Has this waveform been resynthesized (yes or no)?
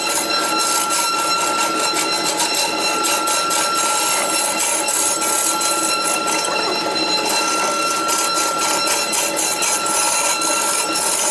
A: no